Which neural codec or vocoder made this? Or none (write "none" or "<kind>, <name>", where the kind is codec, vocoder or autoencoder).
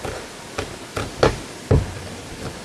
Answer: none